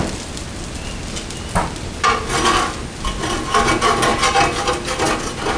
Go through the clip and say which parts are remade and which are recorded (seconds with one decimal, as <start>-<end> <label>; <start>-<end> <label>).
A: 0.0-5.6 recorded